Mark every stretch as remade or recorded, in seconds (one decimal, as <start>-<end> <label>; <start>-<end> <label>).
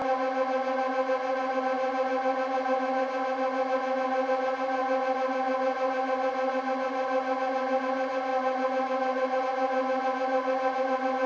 0.0-8.3 recorded; 8.3-9.4 remade; 9.4-11.3 recorded